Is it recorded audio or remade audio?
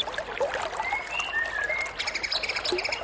recorded